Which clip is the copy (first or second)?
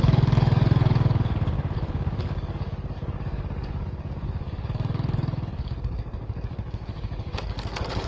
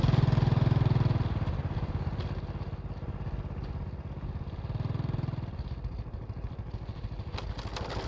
first